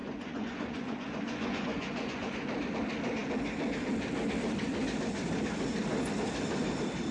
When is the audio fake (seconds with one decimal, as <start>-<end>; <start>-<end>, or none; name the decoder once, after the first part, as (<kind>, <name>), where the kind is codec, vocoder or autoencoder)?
0.0-2.3 (vocoder, Vocos)